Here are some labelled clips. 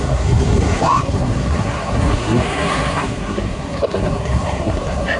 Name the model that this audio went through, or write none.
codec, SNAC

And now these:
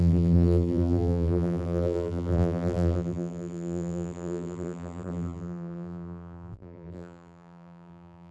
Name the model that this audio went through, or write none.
vocoder, BigVGAN v2